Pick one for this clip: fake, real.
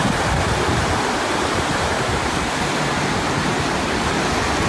fake